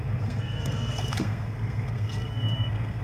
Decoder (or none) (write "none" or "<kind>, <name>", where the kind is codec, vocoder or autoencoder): codec, SNAC